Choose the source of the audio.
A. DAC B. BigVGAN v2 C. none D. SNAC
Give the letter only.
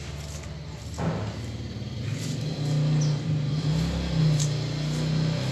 C